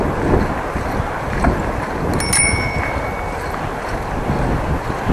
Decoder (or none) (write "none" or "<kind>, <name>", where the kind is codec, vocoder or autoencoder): none